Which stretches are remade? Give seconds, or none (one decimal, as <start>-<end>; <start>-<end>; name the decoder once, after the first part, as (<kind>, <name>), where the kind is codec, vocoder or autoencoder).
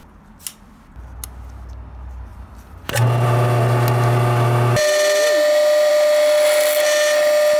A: 2.3-2.9 (vocoder, BigVGAN v2)